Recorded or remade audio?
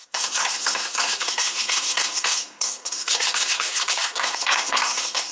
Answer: remade